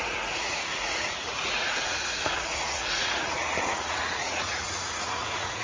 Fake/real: fake